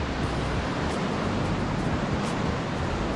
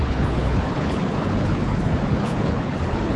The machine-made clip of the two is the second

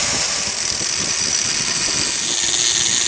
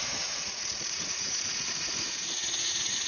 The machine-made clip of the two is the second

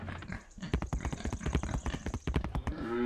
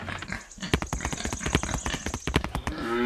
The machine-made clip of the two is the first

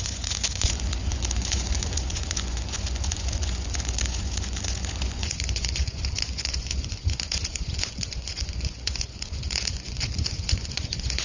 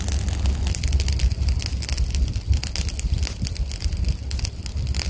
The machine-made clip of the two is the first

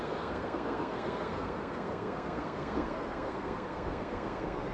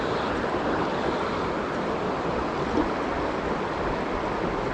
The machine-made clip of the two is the first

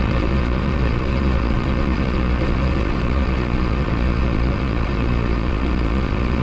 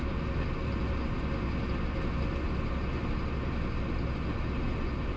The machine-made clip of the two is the first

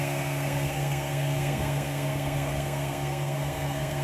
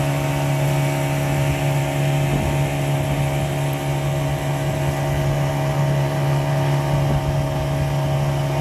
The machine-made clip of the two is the first